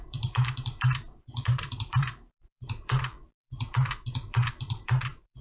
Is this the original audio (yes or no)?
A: no